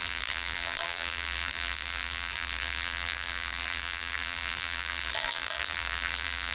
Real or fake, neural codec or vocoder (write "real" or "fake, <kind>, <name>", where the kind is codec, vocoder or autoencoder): fake, vocoder, BigVGAN v2